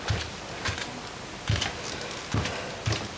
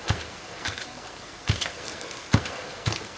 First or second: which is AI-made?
second